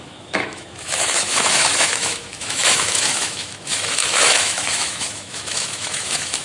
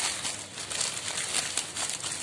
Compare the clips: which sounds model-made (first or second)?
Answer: first